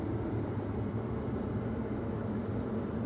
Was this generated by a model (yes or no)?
no